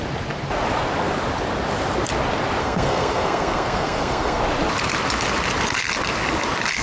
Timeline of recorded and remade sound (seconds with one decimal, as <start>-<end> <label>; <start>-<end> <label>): 0.0-2.6 recorded; 2.6-4.4 remade; 4.4-6.8 recorded